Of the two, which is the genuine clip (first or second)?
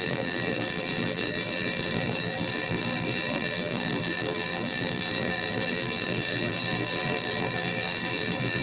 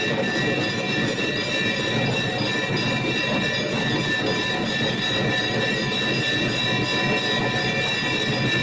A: second